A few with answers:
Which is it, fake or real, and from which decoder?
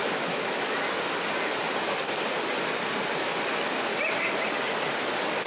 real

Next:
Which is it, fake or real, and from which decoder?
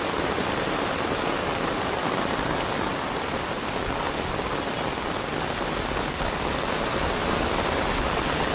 real